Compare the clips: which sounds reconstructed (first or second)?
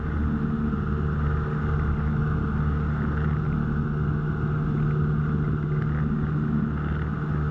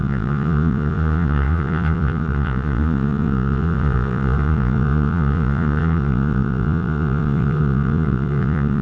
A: second